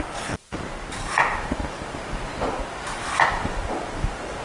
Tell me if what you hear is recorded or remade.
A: remade